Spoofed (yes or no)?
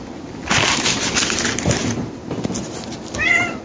no